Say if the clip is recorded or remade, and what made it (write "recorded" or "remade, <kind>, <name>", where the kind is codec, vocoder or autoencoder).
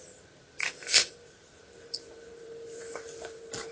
remade, vocoder, BigVGAN v2